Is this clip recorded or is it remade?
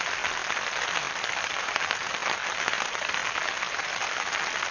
recorded